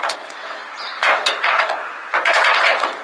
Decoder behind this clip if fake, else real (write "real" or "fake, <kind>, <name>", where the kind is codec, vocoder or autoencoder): fake, vocoder, WaveNeXt